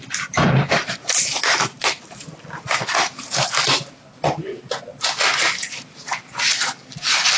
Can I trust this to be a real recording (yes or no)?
yes